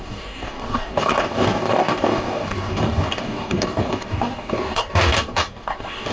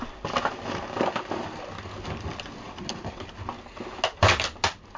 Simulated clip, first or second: first